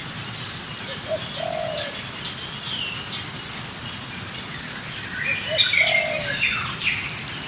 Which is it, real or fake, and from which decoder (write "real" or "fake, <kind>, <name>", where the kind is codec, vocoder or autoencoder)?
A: real